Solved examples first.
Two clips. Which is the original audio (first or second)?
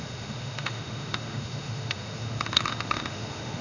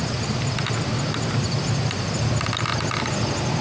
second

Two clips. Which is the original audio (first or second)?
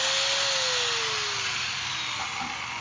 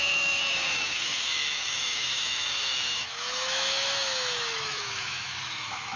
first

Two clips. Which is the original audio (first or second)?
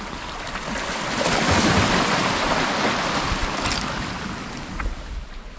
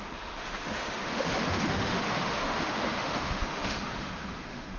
first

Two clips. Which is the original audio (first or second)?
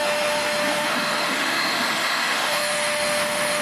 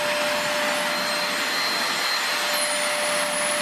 second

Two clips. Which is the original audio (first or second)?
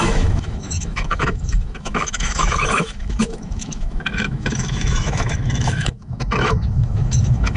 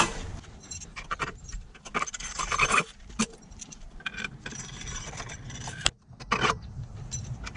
second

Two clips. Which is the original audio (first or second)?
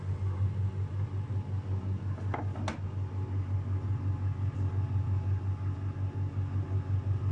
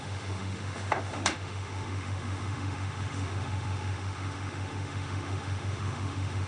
first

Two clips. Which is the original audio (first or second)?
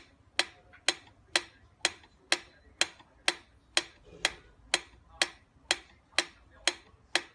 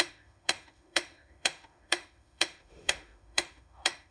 first